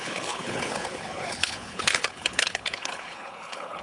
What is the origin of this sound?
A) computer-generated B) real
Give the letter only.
A